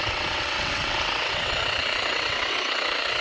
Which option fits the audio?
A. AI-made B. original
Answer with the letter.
A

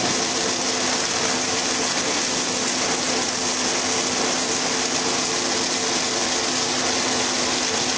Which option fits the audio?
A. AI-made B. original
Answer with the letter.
B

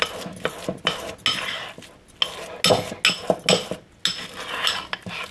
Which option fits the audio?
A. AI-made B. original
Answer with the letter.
B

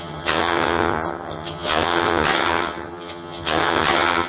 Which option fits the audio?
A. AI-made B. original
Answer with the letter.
A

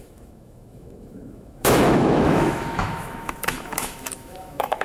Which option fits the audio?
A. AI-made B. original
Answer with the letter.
A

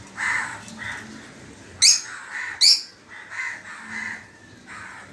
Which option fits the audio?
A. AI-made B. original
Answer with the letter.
B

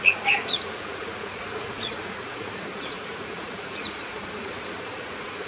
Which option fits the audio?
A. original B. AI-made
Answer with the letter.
B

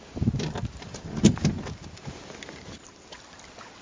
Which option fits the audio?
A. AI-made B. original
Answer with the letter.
B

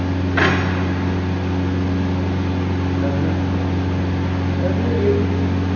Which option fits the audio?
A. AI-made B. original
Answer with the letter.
B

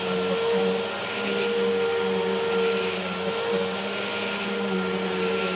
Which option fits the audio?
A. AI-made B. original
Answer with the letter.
B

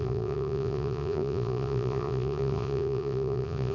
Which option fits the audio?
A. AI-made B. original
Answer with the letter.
A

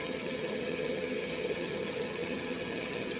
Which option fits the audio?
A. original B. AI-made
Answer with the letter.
B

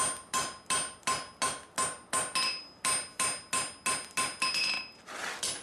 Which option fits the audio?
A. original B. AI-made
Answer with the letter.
A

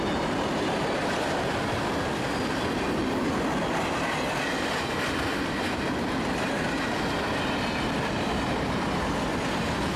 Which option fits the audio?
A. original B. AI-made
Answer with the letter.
B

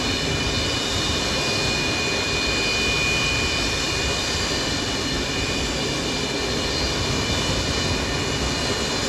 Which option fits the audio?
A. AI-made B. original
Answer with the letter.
B